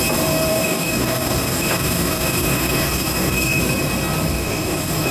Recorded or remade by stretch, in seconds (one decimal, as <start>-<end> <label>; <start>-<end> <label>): 0.0-0.5 recorded; 0.5-3.6 remade; 3.6-4.3 recorded; 4.3-5.1 remade